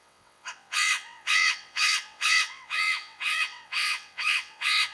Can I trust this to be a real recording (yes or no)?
no